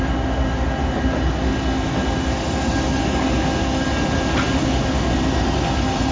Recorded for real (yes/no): yes